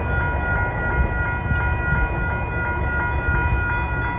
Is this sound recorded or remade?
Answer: recorded